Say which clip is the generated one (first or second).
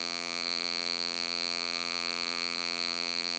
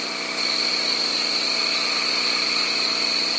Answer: first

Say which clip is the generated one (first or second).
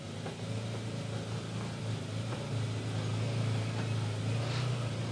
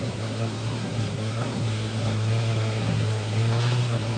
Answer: second